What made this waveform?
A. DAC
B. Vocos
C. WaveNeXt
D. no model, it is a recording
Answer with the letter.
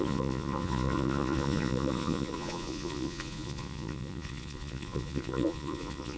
B